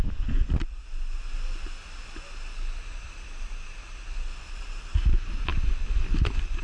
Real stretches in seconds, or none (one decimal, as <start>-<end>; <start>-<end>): 0.0-6.6